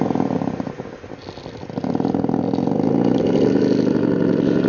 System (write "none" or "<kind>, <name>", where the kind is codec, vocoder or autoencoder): none